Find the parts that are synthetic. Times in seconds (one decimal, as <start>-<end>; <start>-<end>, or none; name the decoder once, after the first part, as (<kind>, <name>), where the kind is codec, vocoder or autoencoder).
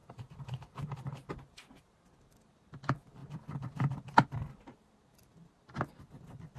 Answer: 0.0-1.3 (vocoder, BigVGAN v2); 3.2-4.9